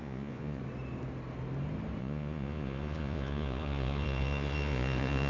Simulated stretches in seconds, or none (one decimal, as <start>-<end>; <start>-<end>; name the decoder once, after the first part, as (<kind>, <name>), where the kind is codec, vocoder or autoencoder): 0.0-0.6 (vocoder, Vocos); 2.0-5.3